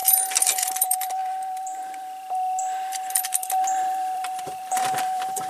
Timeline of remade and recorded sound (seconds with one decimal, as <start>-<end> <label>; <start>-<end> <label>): 0.0-5.5 remade